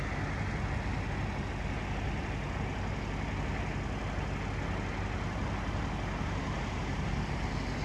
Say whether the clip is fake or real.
real